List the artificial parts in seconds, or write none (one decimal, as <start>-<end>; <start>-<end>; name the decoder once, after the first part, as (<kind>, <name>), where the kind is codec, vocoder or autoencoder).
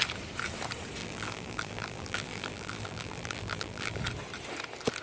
1.0-4.0 (vocoder, BigVGAN v2)